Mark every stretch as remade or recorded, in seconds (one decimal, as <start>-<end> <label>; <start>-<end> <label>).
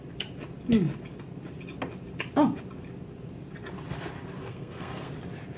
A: 0.0-4.4 recorded; 4.4-5.1 remade; 5.1-5.6 recorded